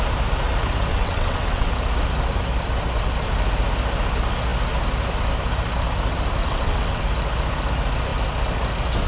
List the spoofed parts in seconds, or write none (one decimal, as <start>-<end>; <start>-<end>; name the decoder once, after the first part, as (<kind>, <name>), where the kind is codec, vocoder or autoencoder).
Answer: 0.9-1.7 (vocoder, WaveNeXt); 6.4-7.0